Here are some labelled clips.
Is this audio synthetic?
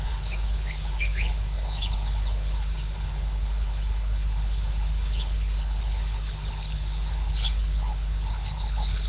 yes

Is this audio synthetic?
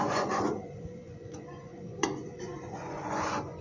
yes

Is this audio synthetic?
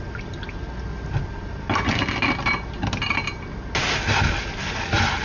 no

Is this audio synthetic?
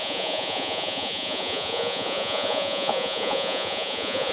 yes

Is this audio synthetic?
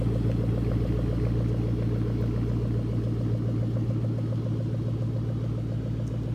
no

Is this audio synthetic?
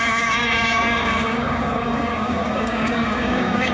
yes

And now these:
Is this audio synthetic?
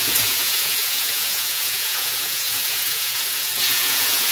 yes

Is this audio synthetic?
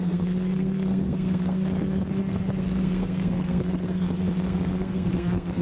yes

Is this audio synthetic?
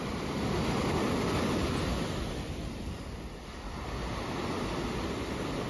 no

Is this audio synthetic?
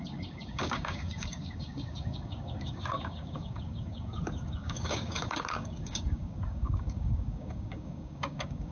yes